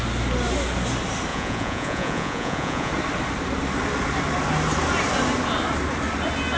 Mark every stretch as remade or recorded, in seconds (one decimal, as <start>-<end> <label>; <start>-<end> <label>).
0.0-1.3 recorded; 1.3-2.9 remade; 2.9-6.6 recorded